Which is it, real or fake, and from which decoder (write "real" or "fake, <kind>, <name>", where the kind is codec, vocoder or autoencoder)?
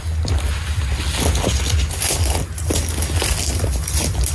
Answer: real